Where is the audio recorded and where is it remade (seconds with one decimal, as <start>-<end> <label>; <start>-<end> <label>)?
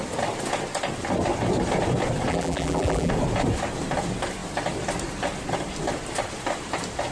0.0-2.3 recorded; 2.3-3.1 remade; 3.1-7.1 recorded